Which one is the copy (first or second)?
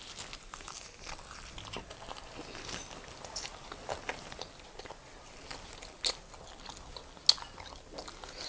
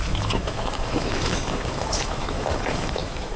second